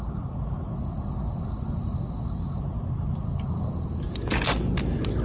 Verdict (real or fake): real